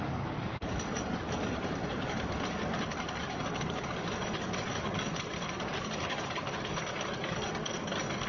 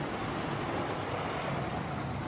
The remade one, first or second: first